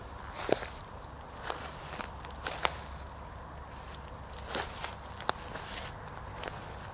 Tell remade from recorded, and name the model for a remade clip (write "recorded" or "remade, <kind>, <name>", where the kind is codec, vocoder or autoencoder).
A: recorded